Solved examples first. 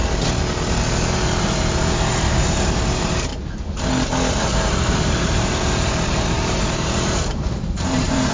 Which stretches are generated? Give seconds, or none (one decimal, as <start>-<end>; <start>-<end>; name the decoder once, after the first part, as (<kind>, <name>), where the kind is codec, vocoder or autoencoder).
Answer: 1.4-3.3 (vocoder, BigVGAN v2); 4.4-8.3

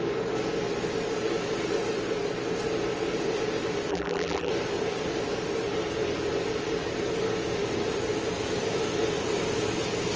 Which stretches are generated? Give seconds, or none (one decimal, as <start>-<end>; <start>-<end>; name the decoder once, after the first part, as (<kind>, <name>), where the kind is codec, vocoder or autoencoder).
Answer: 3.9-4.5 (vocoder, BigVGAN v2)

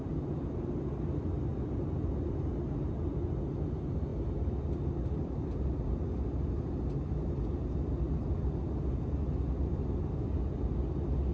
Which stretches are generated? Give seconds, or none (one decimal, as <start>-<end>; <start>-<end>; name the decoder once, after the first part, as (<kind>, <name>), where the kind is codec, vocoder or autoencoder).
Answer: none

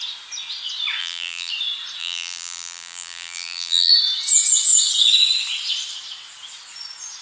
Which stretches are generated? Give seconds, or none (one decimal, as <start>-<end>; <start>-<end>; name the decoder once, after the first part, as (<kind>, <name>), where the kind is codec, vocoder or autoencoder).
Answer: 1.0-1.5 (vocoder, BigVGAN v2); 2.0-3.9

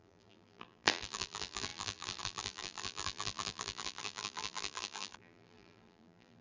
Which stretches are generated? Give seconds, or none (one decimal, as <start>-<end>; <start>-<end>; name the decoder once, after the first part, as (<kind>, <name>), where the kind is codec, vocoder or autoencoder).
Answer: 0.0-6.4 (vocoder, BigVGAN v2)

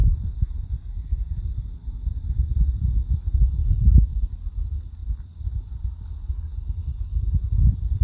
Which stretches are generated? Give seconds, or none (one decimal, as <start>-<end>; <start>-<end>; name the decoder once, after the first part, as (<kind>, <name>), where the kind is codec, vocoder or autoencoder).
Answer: 0.0-1.2 (vocoder, BigVGAN v2); 5.0-5.5; 6.5-7.4

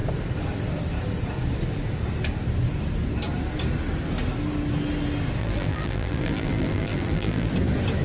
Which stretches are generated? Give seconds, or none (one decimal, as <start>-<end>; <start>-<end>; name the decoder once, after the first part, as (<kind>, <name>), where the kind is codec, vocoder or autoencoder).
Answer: 5.4-7.5 (vocoder, BigVGAN v2)

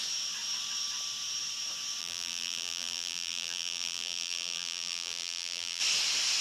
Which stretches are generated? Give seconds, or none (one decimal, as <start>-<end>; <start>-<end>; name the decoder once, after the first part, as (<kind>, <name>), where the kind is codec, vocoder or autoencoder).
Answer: 2.0-5.8 (vocoder, BigVGAN v2)